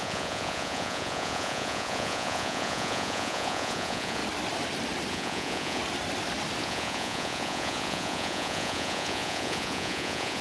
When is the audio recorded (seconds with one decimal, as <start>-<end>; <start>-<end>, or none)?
4.2-5.1; 5.8-6.6